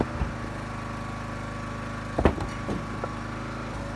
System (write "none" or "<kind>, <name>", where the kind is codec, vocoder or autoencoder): none